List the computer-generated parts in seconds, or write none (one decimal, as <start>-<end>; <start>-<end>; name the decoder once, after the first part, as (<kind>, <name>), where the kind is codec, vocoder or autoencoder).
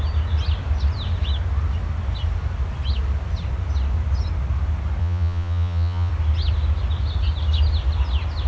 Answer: 5.0-6.1 (vocoder, Vocos)